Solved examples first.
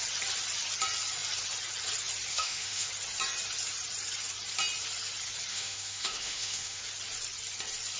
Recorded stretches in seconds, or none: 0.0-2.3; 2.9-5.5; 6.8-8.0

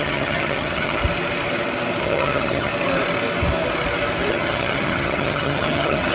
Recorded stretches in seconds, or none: 1.0-2.0; 2.7-4.3

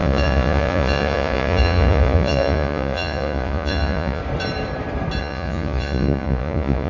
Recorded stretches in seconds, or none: 4.2-5.2

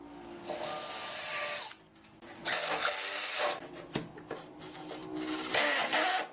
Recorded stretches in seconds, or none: 0.0-6.3